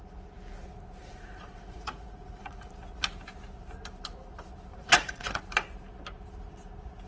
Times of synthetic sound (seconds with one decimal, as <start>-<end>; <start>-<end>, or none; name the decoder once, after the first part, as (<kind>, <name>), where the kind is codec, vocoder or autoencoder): 1.0-2.7 (vocoder, Vocos); 4.7-5.4